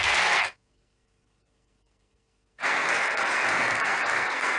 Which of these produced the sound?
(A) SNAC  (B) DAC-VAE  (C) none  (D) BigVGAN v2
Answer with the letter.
A